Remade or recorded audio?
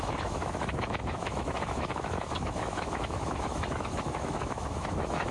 remade